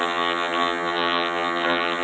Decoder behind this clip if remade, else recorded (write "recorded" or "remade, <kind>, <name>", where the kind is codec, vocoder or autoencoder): remade, vocoder, HiFi-GAN